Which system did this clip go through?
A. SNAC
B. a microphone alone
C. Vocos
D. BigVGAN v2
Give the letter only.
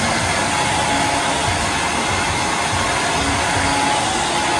B